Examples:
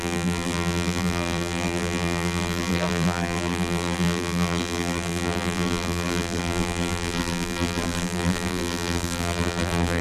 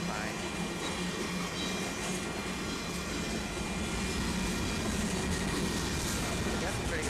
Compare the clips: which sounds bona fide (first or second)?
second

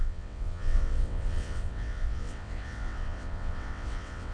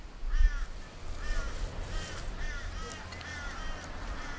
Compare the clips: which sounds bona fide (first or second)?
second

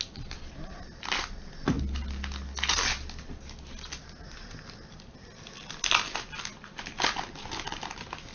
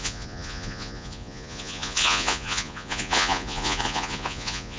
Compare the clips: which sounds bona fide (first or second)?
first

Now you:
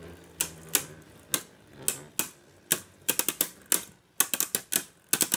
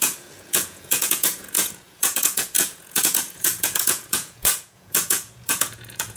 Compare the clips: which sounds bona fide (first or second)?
first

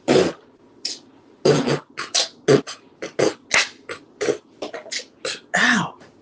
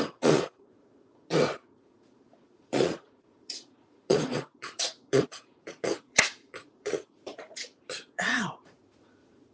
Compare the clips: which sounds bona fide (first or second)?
first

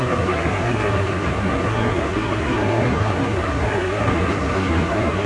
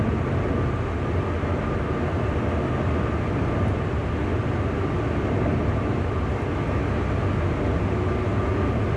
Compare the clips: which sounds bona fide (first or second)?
second